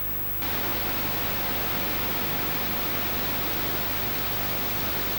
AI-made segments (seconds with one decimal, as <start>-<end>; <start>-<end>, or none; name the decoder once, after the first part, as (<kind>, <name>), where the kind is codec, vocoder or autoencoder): none